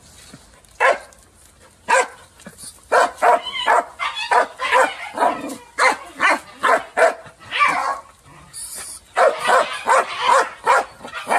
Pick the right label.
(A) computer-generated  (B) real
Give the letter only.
B